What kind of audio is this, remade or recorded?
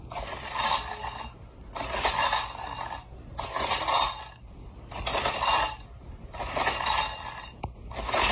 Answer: recorded